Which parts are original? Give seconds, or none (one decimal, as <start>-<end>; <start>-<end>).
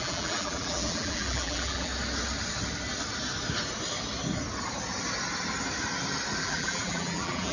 1.9-6.4